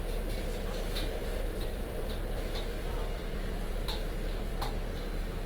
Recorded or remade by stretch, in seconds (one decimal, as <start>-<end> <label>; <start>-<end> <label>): 0.0-1.2 recorded; 1.2-4.5 remade; 4.5-5.5 recorded